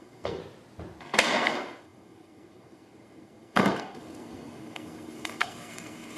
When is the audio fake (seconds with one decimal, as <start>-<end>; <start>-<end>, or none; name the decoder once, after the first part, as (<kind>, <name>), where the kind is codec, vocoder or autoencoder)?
0.0-0.4 (codec, SNAC); 1.0-6.2